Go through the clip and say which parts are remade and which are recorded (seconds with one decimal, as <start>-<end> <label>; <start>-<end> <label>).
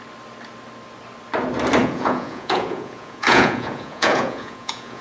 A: 0.0-1.8 recorded; 1.8-5.0 remade